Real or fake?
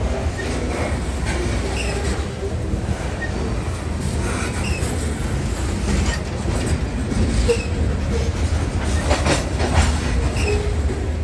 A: real